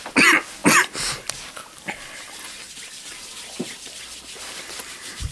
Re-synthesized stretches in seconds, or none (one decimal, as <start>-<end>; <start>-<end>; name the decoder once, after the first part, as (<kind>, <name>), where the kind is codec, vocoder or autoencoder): none